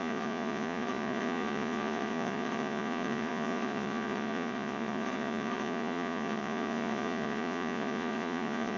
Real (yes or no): no